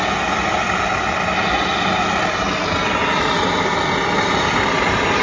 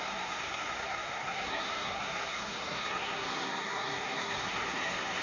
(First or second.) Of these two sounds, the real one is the first